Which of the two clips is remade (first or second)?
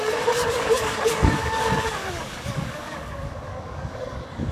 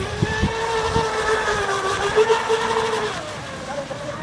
first